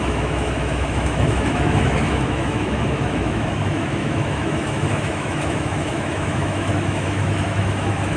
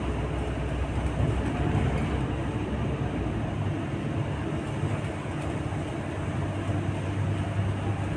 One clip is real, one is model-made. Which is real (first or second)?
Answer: second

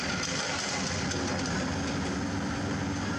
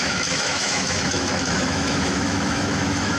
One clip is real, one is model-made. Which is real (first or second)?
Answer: first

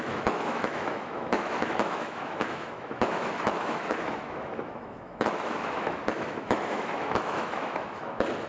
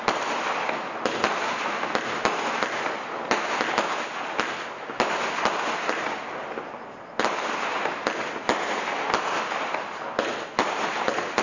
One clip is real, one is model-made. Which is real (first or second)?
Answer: second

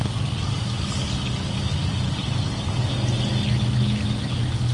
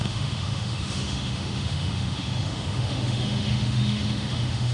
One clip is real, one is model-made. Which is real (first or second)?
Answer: first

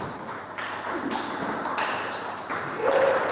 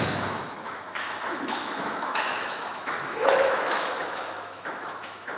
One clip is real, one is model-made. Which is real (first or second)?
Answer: first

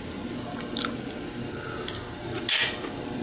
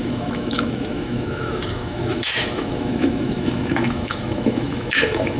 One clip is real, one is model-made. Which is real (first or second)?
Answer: first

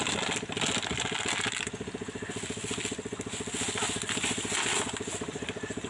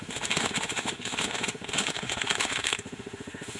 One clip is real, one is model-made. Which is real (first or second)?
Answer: first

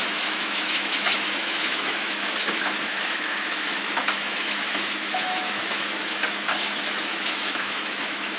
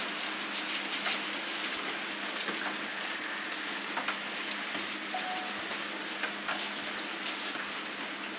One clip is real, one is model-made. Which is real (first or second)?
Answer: second